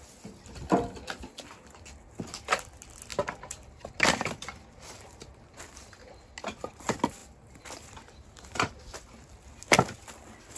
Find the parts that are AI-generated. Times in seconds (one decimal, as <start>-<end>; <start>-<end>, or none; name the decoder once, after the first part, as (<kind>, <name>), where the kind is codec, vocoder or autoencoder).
3.1-5.5 (vocoder, BigVGAN v2); 7.2-8.7